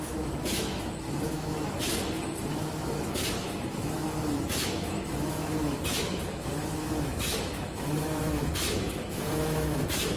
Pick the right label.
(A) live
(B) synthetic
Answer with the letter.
B